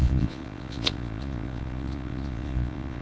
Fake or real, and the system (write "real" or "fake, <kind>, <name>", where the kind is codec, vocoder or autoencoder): fake, vocoder, Vocos